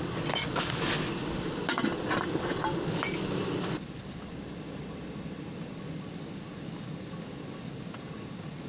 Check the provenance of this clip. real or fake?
real